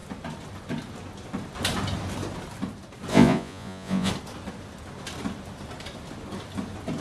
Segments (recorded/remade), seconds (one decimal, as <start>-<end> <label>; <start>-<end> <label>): 0.0-3.1 recorded; 3.1-4.1 remade; 4.1-7.0 recorded